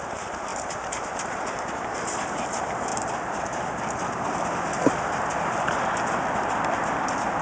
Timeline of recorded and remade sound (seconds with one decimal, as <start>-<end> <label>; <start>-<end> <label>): 0.0-2.9 remade; 2.9-7.4 recorded